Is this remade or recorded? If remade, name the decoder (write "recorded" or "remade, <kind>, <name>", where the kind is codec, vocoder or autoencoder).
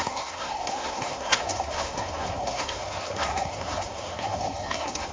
remade, codec, SNAC